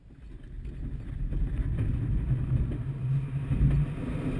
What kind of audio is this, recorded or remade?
recorded